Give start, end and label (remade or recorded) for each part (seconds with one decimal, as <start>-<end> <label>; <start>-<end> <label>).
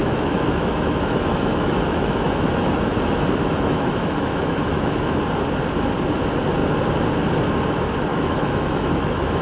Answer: 0.0-5.2 remade; 5.2-8.1 recorded; 8.1-9.4 remade